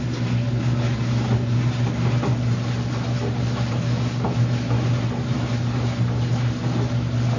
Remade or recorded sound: recorded